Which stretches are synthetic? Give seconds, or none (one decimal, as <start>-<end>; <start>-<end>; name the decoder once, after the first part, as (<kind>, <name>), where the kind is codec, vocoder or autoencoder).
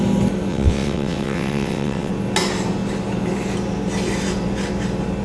0.5-2.1 (vocoder, WaveNeXt)